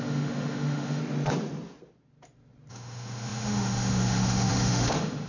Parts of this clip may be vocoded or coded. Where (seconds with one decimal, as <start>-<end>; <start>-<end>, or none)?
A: 0.0-1.0; 2.7-5.3

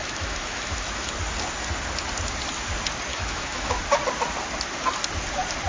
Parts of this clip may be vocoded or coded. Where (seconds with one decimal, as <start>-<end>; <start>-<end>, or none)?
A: 0.0-1.1; 3.1-3.8

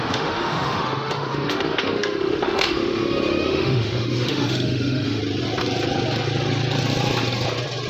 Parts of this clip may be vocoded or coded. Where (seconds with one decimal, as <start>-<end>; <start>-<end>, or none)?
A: 0.0-5.2

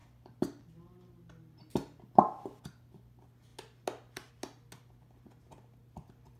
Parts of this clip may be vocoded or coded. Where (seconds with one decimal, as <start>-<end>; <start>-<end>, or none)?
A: none

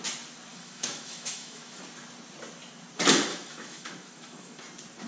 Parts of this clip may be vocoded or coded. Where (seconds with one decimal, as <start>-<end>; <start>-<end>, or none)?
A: 0.5-1.8; 3.3-4.6